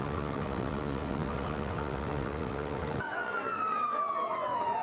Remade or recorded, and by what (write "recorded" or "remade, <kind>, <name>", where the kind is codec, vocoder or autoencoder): remade, vocoder, WaveNeXt